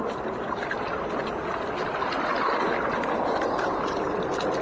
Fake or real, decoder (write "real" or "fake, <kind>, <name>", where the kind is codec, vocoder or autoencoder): real